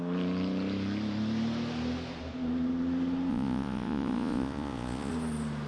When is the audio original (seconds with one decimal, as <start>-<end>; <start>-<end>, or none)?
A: 0.0-3.3; 5.1-5.7